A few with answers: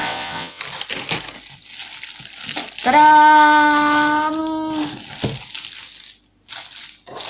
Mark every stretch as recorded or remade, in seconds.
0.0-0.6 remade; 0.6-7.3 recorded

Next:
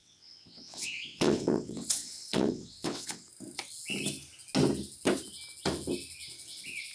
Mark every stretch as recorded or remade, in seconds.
0.0-3.3 remade; 3.3-6.9 recorded

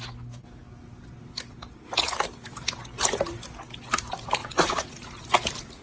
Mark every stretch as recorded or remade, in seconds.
0.0-4.4 recorded; 4.4-4.9 remade; 4.9-5.8 recorded

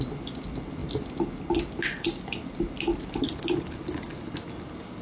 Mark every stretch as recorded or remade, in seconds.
0.0-5.0 recorded

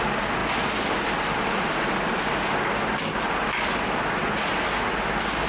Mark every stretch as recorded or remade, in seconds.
0.0-5.5 recorded

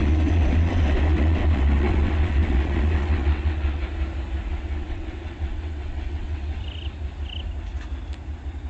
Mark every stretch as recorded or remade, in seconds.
0.0-3.8 remade; 3.8-4.5 recorded; 4.5-6.6 remade; 6.6-8.7 recorded

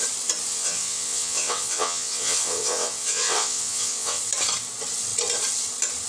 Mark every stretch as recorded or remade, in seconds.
0.0-0.5 recorded; 0.5-4.2 remade; 4.2-6.1 recorded

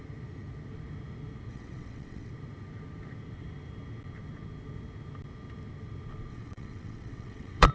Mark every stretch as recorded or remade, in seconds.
0.0-1.5 recorded; 1.5-2.3 remade; 2.3-6.3 recorded; 6.3-7.7 remade